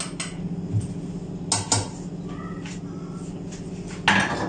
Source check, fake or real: real